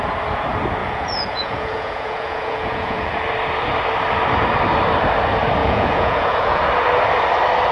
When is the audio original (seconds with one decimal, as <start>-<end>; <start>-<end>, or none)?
0.0-0.8; 3.1-5.6; 6.6-7.7